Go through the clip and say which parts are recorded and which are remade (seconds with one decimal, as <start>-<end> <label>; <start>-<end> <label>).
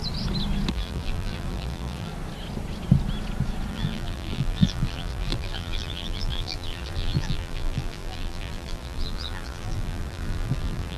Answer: 0.0-0.7 recorded; 0.7-2.1 remade; 2.1-3.7 recorded; 3.7-11.0 remade